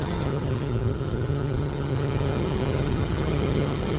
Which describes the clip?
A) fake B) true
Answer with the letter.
A